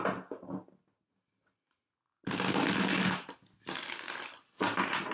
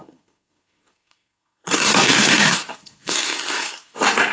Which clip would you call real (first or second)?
first